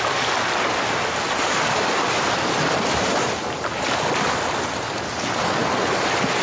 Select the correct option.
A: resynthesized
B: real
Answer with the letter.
B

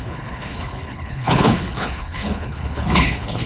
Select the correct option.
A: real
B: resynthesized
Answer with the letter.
B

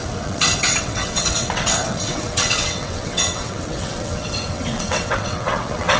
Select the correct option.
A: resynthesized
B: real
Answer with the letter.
A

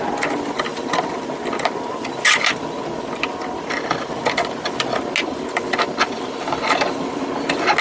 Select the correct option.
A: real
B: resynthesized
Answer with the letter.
A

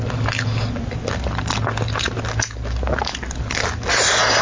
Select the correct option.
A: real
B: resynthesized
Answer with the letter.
A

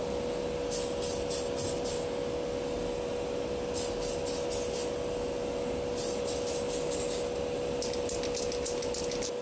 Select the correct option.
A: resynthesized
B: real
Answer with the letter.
B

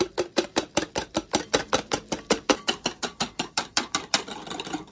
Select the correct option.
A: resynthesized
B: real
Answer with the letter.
A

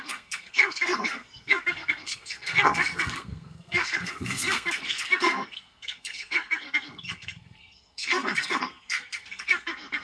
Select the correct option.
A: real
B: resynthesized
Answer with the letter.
B